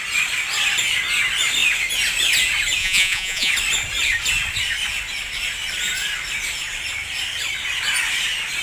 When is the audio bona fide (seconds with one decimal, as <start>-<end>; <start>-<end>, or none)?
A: 0.0-2.8; 3.5-8.6